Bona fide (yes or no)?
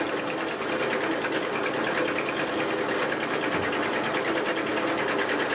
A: yes